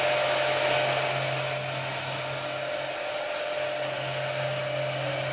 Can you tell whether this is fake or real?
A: real